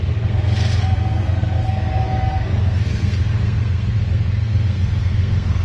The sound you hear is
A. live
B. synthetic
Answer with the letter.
B